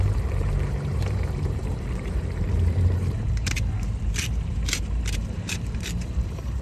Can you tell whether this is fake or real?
fake